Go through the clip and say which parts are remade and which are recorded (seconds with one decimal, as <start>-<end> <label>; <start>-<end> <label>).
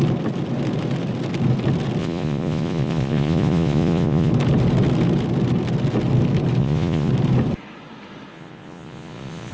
0.0-2.0 recorded; 2.0-4.3 remade; 4.3-6.6 recorded; 6.6-7.1 remade; 7.1-8.3 recorded; 8.3-9.5 remade